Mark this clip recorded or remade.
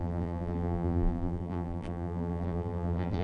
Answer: remade